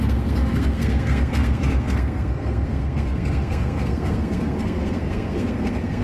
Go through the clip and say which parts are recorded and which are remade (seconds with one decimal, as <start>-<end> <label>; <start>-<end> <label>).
0.0-6.0 remade